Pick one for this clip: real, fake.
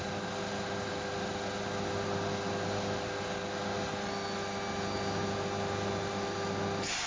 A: real